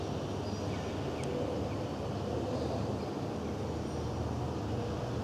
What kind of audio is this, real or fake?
real